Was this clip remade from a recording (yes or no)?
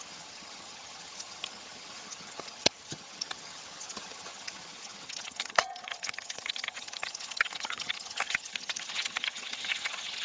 yes